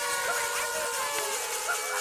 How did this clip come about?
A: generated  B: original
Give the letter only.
B